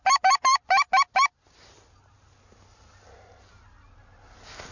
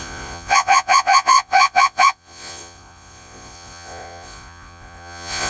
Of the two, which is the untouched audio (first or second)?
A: first